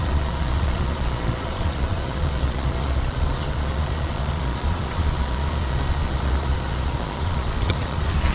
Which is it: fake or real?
fake